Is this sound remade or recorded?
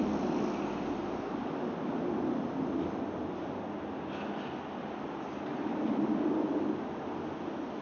recorded